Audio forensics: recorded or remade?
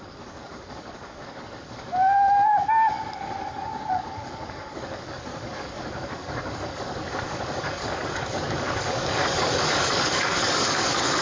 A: remade